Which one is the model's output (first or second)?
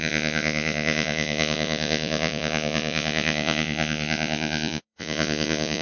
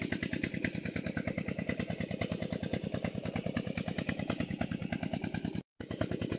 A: first